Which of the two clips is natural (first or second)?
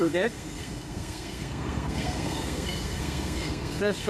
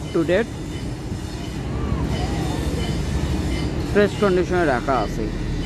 second